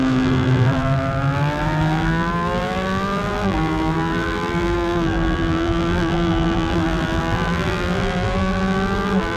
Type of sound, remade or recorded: remade